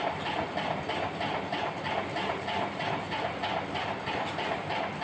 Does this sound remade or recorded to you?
recorded